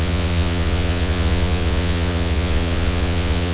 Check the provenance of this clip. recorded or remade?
remade